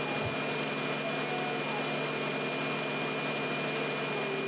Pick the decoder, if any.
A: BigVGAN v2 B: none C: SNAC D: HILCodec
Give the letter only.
B